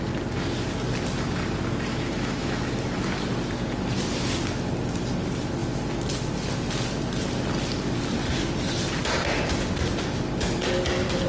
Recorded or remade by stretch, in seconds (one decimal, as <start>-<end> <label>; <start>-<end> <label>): 0.0-1.9 recorded; 1.9-2.6 remade; 2.6-11.3 recorded